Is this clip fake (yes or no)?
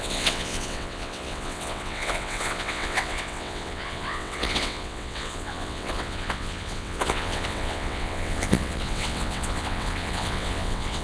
yes